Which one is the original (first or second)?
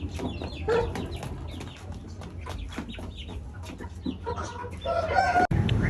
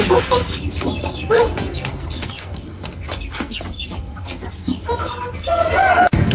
first